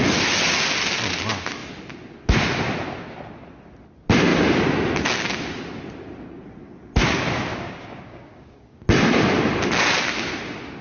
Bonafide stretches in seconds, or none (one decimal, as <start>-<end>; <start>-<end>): 0.0-7.5; 8.8-10.8